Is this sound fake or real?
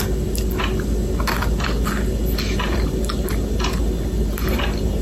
real